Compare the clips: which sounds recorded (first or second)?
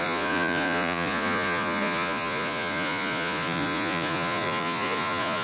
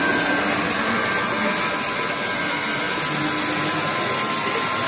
second